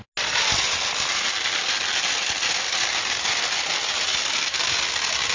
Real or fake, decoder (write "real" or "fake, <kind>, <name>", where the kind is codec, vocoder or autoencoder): real